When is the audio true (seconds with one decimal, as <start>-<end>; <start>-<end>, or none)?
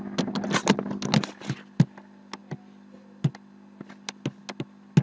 0.0-5.0